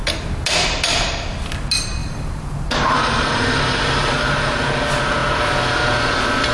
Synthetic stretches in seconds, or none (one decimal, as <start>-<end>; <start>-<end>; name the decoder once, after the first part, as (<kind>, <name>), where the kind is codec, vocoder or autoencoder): 2.0-4.7 (vocoder, BigVGAN v2)